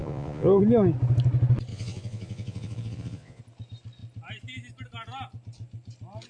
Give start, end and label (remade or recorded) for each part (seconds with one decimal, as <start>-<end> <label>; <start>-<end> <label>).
0.0-0.6 remade; 0.6-1.7 recorded; 1.7-3.4 remade; 3.4-6.3 recorded